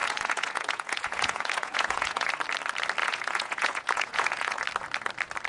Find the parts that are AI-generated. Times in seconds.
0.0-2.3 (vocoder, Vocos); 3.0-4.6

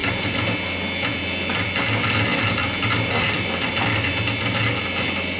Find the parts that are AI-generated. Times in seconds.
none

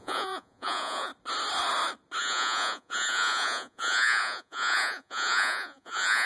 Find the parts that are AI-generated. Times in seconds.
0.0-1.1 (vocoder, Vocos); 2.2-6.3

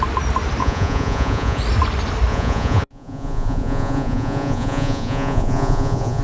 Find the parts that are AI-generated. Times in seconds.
0.6-1.6 (vocoder, Vocos); 2.3-6.2

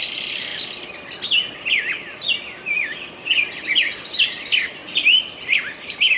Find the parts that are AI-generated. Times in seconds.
none